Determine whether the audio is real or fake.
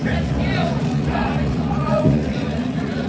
fake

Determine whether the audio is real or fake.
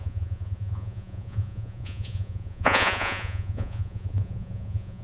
fake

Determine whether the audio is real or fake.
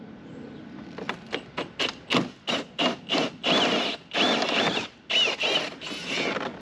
real